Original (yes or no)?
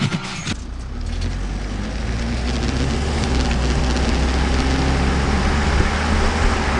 yes